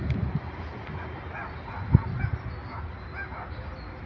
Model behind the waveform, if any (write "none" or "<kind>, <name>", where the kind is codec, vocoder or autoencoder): none